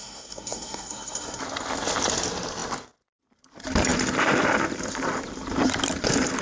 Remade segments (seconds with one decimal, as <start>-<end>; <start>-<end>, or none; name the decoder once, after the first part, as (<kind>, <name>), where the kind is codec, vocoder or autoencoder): 0.0-1.4 (codec, SNAC)